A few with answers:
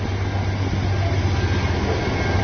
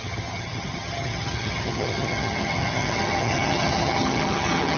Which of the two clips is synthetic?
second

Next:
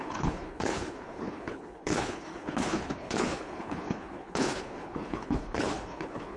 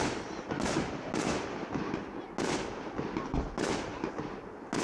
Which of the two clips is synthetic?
first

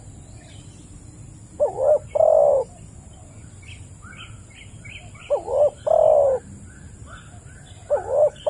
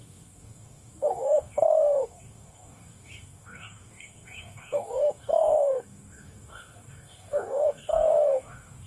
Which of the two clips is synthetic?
second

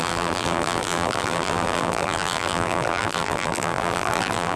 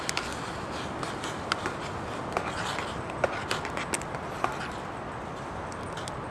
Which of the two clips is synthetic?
first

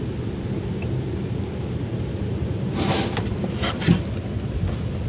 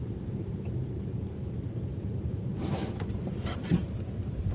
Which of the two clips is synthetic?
second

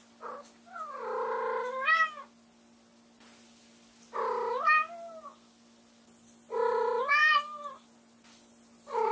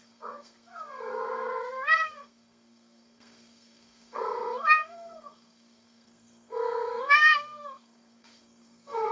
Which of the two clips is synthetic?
second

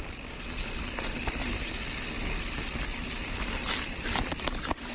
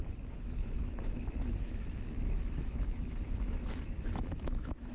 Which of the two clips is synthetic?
second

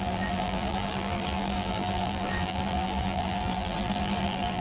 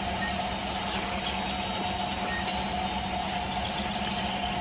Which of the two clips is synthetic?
first